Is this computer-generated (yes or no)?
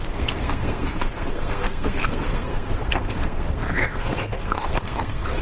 yes